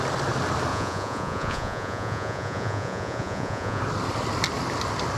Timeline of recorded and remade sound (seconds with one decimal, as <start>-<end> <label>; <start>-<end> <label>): 0.0-0.7 recorded; 0.7-3.8 remade; 3.8-5.2 recorded